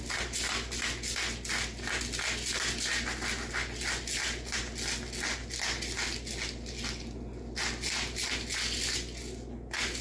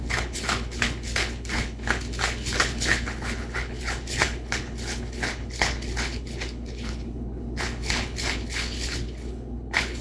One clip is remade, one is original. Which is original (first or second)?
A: first